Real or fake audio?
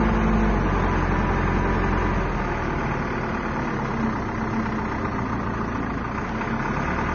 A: real